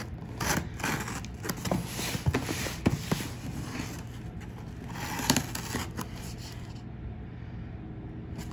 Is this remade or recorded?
recorded